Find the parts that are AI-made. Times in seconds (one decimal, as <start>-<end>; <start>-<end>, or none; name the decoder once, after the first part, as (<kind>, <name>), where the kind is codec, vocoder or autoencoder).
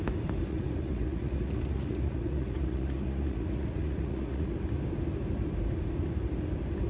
0.5-4.6 (vocoder, Vocos)